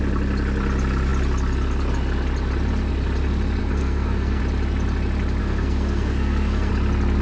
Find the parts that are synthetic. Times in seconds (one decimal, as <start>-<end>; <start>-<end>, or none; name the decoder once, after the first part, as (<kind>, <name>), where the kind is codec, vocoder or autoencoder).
3.6-4.4 (codec, SNAC); 5.4-6.7